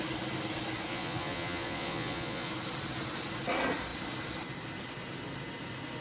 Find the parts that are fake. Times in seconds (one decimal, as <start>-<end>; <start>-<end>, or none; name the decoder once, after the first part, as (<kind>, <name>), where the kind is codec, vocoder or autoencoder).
0.9-2.5 (vocoder, Vocos)